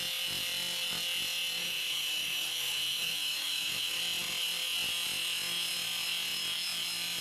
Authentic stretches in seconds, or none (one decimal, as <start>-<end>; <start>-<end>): 0.0-1.6; 4.0-7.2